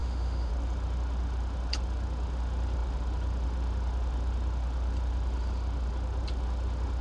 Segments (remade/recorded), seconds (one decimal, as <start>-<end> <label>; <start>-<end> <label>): 0.0-0.5 remade; 0.5-7.0 recorded